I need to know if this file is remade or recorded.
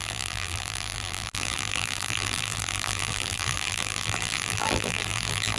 remade